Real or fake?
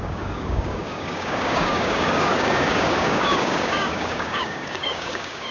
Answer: fake